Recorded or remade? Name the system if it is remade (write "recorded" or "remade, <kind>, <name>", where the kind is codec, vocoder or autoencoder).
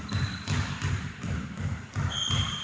recorded